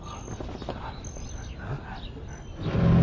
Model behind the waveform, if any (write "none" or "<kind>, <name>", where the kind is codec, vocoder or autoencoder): none